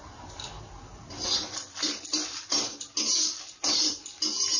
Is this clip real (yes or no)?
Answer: yes